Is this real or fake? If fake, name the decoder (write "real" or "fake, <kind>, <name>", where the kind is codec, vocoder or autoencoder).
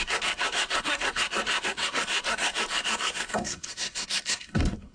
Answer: fake, codec, SNAC